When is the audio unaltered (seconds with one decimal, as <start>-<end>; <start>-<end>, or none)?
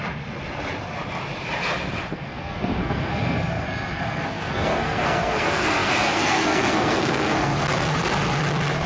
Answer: 0.0-2.1; 7.5-8.9